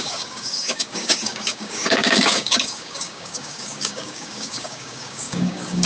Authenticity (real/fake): fake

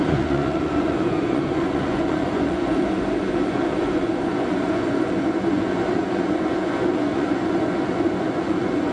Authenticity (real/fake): fake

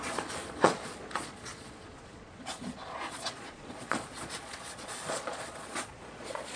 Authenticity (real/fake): fake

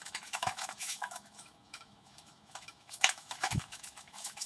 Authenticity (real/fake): fake